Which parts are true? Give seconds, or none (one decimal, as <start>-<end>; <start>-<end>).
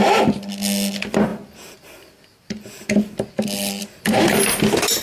0.0-5.0